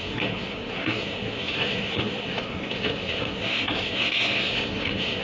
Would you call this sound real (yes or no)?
no